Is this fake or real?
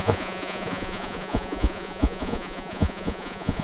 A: fake